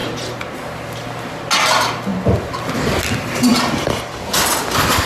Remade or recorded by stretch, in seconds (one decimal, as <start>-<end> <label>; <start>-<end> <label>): 0.0-1.3 remade; 1.3-5.1 recorded